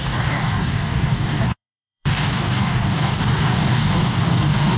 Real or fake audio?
fake